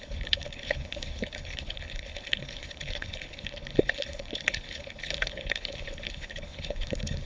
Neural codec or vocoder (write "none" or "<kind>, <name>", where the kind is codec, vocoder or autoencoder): codec, HILCodec